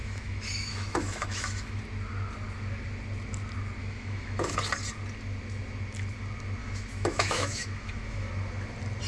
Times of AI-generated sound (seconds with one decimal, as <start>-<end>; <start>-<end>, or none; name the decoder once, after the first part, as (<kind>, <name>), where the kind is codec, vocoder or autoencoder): 0.0-1.8 (autoencoder, DAC-VAE); 3.8-4.6; 6.6-8.3